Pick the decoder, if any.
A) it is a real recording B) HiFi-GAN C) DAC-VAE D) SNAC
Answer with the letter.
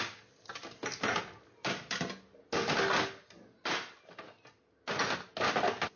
A